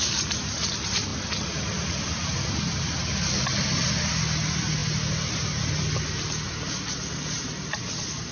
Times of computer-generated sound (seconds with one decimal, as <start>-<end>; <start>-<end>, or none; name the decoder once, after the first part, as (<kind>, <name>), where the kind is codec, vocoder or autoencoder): none